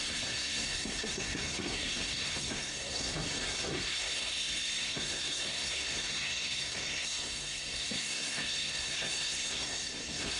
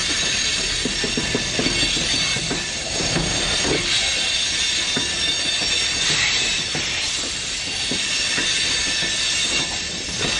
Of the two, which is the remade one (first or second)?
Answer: first